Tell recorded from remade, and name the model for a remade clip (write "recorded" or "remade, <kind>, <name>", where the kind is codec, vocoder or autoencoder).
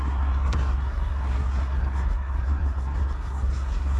remade, codec, SNAC